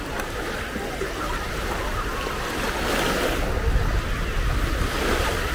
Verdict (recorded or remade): recorded